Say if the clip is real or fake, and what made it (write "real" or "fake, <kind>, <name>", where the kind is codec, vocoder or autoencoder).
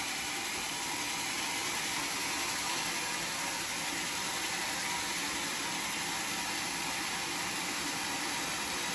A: fake, vocoder, BigVGAN v2